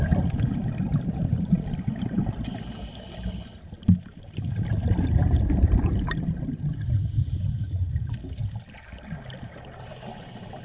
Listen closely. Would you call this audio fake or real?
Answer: real